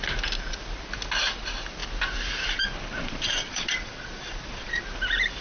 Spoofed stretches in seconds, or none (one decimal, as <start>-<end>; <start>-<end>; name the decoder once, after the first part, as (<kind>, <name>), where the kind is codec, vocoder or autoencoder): 3.5-4.8 (vocoder, Vocos)